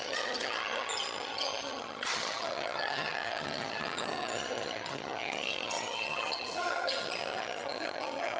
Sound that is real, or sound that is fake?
fake